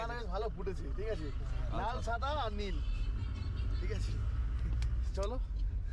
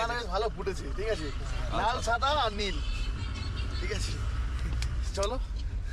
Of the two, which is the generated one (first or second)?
second